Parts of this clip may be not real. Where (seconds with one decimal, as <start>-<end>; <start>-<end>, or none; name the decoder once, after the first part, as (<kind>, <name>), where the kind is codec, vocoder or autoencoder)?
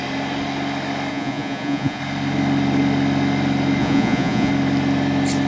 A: 1.1-2.0 (vocoder, Vocos); 3.8-4.5